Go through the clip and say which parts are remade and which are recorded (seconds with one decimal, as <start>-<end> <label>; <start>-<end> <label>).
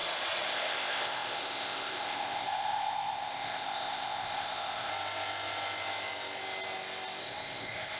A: 0.0-0.5 recorded; 0.5-4.9 remade; 4.9-7.2 recorded; 7.2-8.0 remade